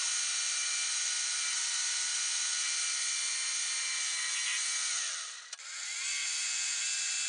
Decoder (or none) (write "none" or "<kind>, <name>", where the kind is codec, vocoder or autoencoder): none